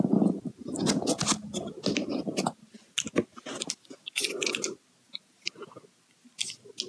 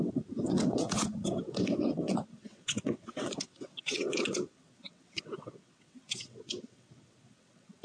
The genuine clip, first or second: first